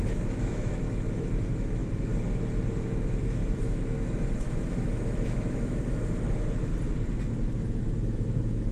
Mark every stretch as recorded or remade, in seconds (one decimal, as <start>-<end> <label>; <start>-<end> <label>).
0.0-2.1 remade; 2.1-2.7 recorded; 2.7-6.7 remade; 6.7-7.8 recorded; 7.8-8.7 remade